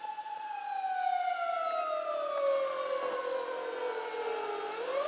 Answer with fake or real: real